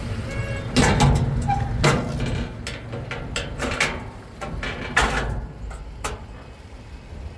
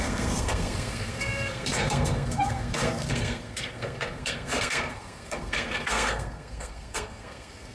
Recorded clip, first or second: first